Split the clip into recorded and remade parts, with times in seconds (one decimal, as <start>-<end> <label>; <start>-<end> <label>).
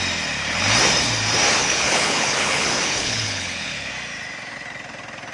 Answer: 0.0-1.6 recorded; 1.6-3.9 remade; 3.9-5.3 recorded